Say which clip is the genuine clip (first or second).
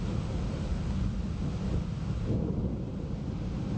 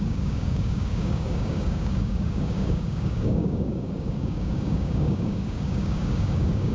first